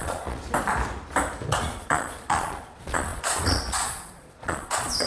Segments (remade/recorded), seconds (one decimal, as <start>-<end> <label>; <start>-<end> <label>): 0.0-0.4 remade; 0.4-1.5 recorded; 1.5-5.1 remade